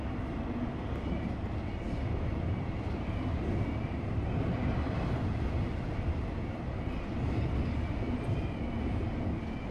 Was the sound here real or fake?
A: real